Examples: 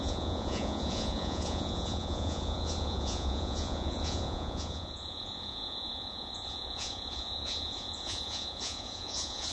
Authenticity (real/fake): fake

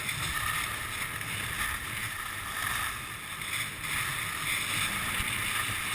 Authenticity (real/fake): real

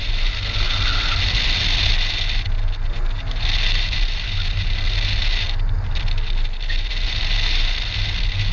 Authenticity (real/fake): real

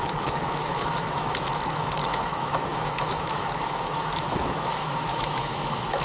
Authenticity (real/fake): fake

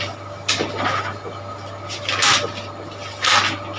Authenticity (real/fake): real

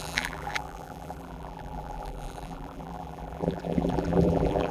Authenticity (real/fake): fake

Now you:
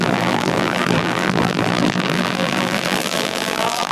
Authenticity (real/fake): fake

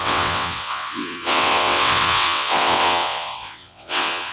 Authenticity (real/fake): fake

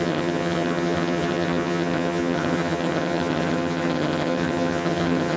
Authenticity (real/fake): fake